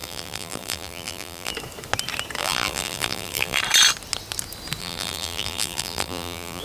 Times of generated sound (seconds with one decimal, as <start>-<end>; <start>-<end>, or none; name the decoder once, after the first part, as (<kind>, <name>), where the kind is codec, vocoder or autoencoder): 0.0-1.5 (vocoder, BigVGAN v2); 2.4-3.6; 4.8-6.6